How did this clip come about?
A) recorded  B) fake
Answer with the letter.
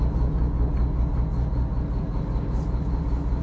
A